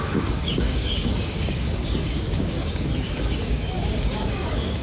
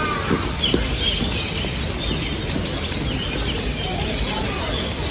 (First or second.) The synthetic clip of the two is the first